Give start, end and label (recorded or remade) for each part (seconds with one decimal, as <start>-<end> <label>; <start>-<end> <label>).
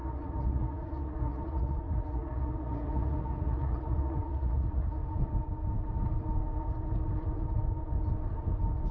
0.0-5.0 remade; 5.0-8.9 recorded